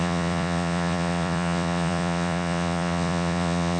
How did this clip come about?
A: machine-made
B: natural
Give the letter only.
A